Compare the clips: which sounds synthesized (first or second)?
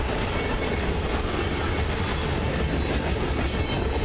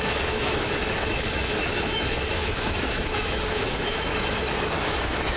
second